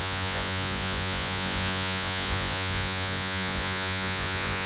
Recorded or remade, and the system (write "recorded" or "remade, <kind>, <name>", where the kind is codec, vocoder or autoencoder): remade, vocoder, Vocos